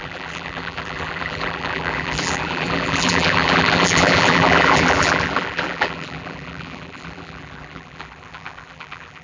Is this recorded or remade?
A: remade